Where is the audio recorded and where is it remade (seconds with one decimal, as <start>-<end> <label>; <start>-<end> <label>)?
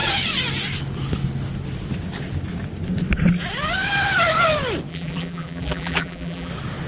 0.0-4.9 recorded; 4.9-6.5 remade; 6.5-6.9 recorded